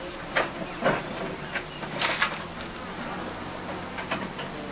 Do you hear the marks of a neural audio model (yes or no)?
no